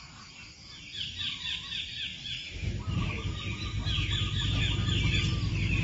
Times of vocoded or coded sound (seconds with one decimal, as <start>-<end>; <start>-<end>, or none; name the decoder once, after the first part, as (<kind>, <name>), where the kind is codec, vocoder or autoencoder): 2.1-3.3 (vocoder, BigVGAN v2)